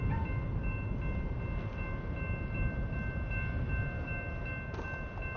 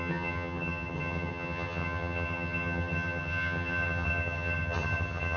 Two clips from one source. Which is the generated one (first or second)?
second